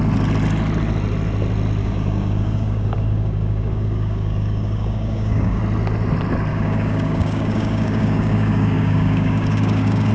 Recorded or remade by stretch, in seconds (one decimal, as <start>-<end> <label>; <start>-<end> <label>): 0.0-1.8 recorded; 1.8-5.6 remade; 5.6-6.5 recorded; 6.5-10.1 remade